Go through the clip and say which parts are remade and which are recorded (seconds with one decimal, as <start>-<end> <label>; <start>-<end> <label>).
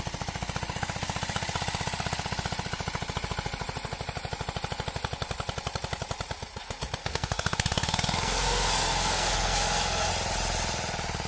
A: 0.0-7.0 recorded; 7.0-10.1 remade; 10.1-11.3 recorded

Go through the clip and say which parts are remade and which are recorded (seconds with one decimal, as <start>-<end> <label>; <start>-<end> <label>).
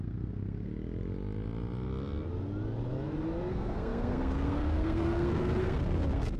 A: 0.0-0.7 remade; 0.7-3.5 recorded; 3.5-6.4 remade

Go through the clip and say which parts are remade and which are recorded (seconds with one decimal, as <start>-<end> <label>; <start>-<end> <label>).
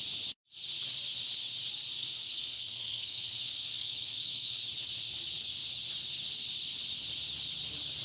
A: 0.0-2.0 recorded; 2.0-4.6 remade; 4.6-8.0 recorded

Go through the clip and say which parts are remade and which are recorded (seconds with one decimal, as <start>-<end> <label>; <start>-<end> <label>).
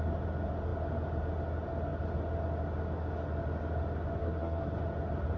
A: 0.0-4.2 recorded; 4.2-4.8 remade; 4.8-5.4 recorded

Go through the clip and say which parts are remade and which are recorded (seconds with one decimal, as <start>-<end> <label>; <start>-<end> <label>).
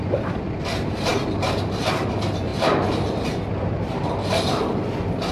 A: 0.0-5.3 recorded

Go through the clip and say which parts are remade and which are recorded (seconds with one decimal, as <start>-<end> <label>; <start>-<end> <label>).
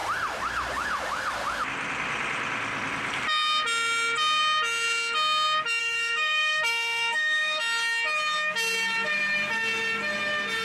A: 0.0-5.8 recorded; 5.8-7.6 remade; 7.6-10.6 recorded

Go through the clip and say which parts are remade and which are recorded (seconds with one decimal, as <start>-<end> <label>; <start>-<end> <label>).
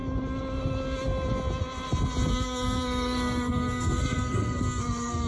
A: 0.0-2.3 recorded; 2.3-5.3 remade